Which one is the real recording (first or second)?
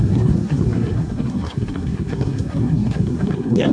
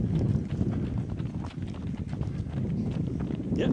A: second